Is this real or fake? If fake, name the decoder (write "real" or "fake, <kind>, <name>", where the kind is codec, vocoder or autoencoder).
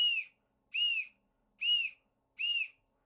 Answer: real